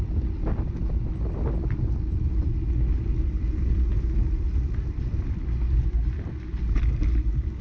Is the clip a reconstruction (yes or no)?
no